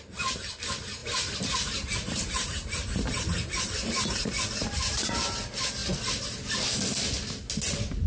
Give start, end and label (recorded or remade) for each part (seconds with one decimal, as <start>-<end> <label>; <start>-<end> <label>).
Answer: 0.0-1.0 recorded; 1.0-5.1 remade; 5.1-5.8 recorded; 5.8-6.6 remade; 6.6-8.1 recorded